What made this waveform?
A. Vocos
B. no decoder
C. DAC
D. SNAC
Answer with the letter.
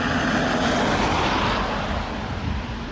B